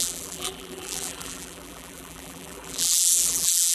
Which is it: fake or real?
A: fake